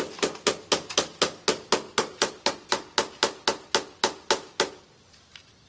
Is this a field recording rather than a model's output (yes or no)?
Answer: yes